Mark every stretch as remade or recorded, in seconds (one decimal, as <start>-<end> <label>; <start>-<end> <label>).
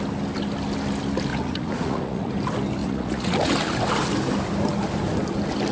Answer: 0.0-1.3 recorded; 1.3-2.3 remade; 2.3-2.8 recorded; 2.8-3.5 remade; 3.5-5.7 recorded